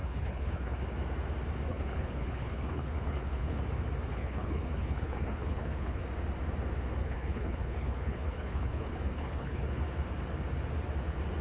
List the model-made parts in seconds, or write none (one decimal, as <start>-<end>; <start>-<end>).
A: 0.0-0.8; 1.7-3.6; 4.1-6.0; 7.0-9.8